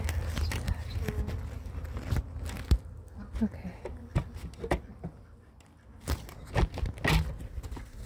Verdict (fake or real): real